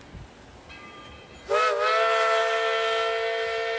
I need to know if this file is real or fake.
real